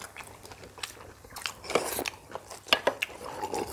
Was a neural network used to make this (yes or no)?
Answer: yes